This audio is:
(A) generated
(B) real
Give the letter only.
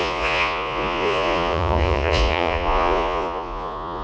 A